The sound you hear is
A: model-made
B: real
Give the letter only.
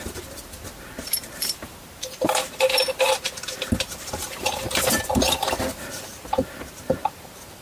B